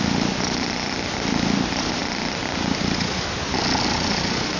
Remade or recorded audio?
recorded